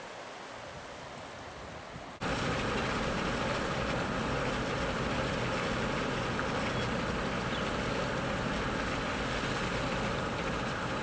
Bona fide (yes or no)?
yes